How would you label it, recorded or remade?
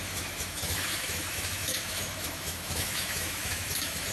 remade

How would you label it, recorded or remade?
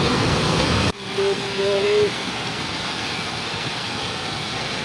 remade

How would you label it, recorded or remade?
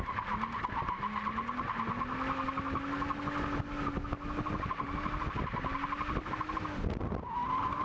recorded